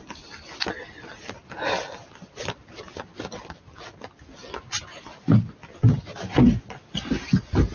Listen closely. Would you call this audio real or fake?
real